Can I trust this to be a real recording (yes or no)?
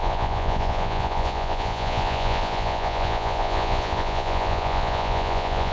no